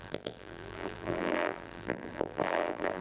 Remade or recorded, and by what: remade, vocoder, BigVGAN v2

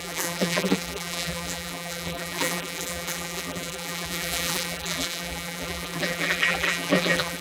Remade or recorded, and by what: remade, vocoder, BigVGAN v2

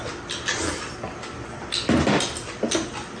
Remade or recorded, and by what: recorded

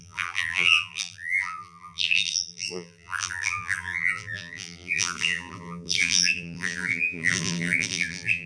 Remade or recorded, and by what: remade, vocoder, BigVGAN v2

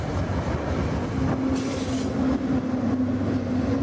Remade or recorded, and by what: recorded